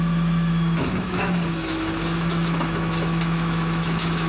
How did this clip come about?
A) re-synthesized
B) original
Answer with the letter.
A